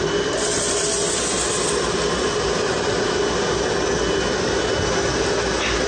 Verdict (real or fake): real